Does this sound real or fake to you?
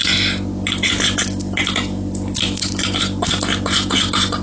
real